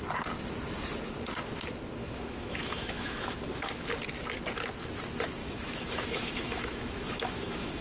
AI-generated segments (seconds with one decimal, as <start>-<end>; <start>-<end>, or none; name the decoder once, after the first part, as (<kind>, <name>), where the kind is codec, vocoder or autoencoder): 2.0-3.9 (autoencoder, DAC-VAE); 5.4-7.8